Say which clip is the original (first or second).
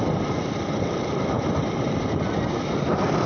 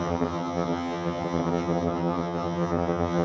first